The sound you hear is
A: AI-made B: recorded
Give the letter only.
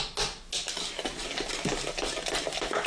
B